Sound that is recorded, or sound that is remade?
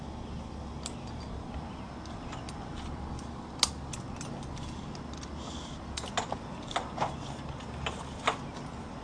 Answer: recorded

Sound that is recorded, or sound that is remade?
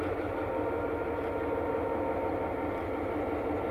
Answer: recorded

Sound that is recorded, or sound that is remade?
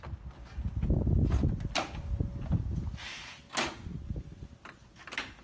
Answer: recorded